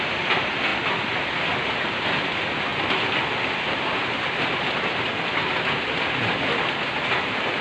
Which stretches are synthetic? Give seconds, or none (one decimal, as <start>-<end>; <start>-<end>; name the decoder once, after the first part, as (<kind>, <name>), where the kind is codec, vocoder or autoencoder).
none